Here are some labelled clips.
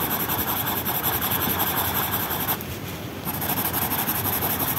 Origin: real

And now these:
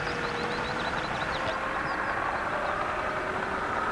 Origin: real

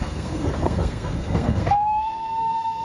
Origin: fake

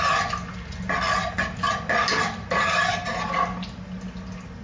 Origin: real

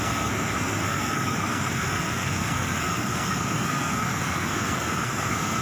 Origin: fake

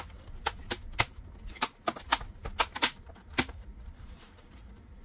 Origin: real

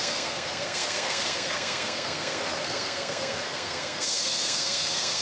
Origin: fake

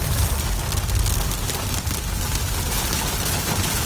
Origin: real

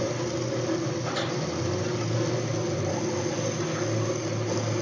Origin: real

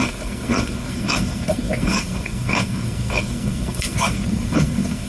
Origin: fake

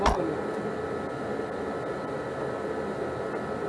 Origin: real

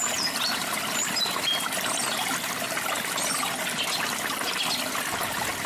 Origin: real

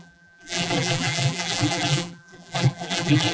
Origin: fake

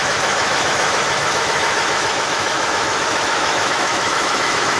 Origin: fake